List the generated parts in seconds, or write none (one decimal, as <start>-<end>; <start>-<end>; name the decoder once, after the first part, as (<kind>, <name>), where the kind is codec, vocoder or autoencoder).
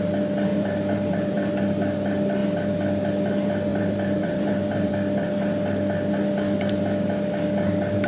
0.5-1.5 (vocoder, BigVGAN v2); 3.7-4.9